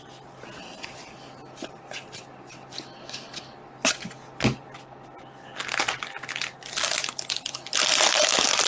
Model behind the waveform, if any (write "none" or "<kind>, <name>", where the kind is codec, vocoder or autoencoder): none